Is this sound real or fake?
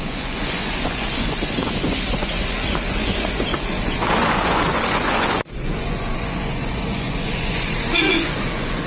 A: fake